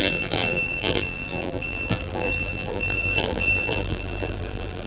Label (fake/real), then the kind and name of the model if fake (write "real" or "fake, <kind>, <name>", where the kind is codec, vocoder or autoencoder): fake, vocoder, BigVGAN v2